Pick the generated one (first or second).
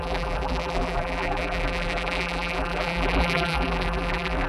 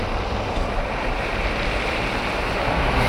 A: first